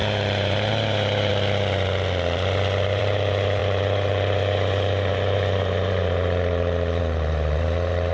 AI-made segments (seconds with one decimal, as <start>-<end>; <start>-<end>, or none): 0.0-1.3; 3.0-8.1